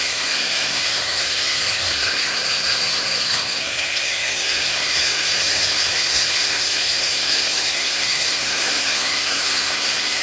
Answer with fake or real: fake